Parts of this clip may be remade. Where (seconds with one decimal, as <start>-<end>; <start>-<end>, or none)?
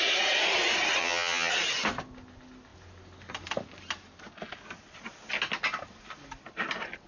1.0-1.5